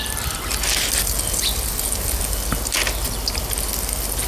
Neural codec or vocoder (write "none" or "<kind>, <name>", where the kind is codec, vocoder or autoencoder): none